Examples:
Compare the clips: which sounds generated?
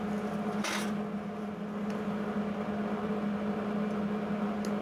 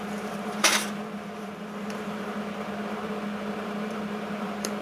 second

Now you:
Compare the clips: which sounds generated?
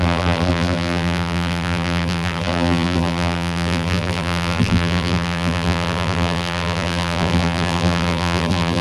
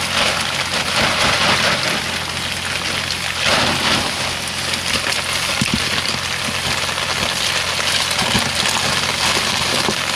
first